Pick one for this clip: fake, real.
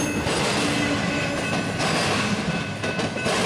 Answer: real